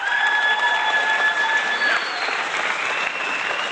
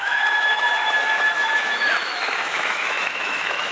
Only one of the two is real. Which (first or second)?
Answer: first